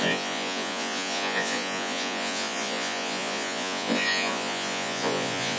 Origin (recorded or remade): remade